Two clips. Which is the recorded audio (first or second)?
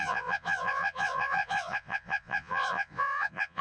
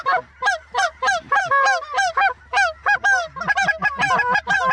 second